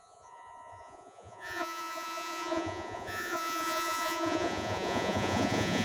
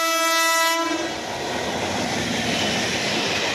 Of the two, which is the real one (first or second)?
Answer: second